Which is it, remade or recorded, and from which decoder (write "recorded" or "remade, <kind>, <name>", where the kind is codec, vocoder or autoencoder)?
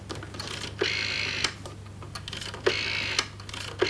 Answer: recorded